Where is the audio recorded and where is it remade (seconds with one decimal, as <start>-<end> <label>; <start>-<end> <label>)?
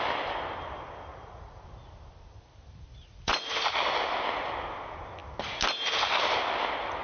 0.0-1.1 recorded; 1.1-1.6 remade; 1.6-2.9 recorded; 2.9-3.5 remade; 3.5-7.0 recorded